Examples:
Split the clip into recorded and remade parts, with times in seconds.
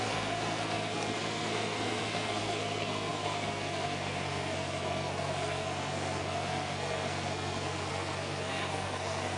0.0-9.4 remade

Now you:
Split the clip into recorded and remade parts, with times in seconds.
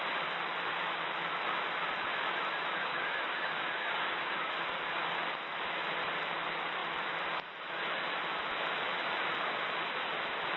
0.0-2.9 recorded; 2.9-4.5 remade; 4.5-10.6 recorded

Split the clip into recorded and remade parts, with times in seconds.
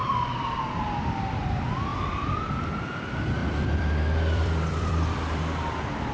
0.0-0.6 remade; 0.6-3.4 recorded; 3.4-5.4 remade; 5.4-6.1 recorded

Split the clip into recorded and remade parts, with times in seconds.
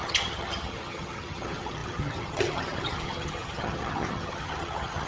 0.0-5.1 remade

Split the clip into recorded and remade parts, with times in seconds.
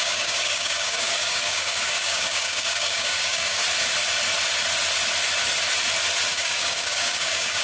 0.0-3.6 remade; 3.6-6.3 recorded; 6.3-7.6 remade